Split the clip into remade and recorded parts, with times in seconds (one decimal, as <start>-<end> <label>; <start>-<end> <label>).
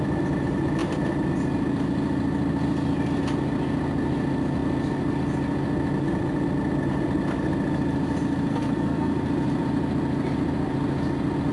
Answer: 0.0-8.5 recorded; 8.5-9.1 remade; 9.1-11.5 recorded